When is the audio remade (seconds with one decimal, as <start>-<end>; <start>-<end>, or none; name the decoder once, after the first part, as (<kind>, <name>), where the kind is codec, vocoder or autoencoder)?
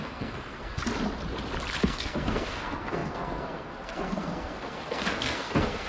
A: 0.0-0.8 (codec, SNAC); 1.8-5.9